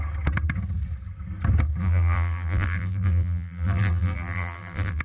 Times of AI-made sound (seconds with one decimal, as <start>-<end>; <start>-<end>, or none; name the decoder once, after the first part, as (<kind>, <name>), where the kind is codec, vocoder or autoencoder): 1.8-5.0 (vocoder, BigVGAN v2)